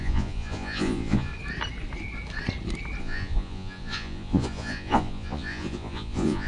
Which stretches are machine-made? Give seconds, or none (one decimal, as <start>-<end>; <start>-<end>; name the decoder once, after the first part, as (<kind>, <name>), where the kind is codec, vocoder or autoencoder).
0.0-1.3 (vocoder, Vocos); 3.0-6.5